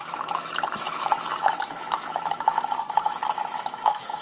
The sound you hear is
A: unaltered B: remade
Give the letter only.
B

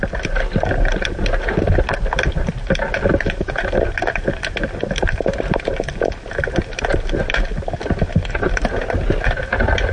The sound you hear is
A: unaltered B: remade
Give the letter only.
A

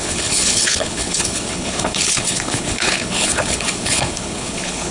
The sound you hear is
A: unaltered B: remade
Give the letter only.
B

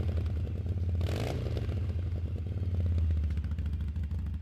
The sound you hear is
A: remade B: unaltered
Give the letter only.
B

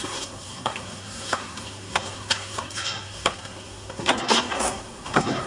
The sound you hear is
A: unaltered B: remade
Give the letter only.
B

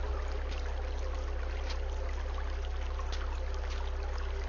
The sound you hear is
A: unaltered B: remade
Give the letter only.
A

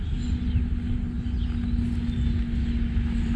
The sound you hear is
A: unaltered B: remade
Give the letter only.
A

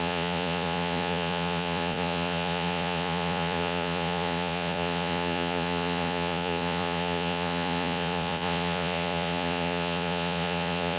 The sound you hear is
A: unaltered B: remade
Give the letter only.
B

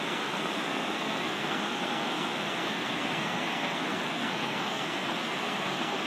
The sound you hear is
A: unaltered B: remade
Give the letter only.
B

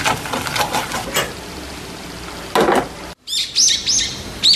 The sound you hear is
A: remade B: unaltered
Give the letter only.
B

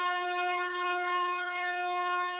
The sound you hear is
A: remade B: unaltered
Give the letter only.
A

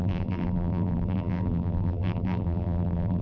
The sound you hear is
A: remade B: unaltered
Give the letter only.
A